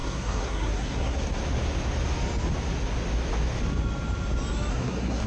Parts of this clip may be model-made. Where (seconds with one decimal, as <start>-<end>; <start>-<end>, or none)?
0.0-1.4; 4.7-5.3